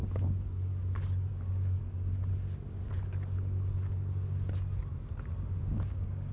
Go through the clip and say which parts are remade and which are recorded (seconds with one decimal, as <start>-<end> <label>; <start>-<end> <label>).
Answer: 0.0-1.3 recorded; 1.3-1.8 remade; 1.8-5.6 recorded; 5.6-6.3 remade